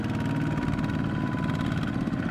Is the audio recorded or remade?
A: recorded